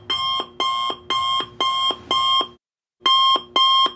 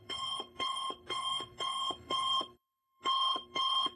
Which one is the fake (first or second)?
second